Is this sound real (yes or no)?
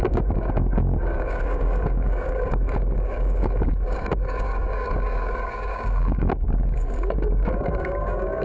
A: no